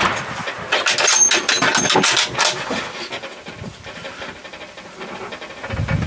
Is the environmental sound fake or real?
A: real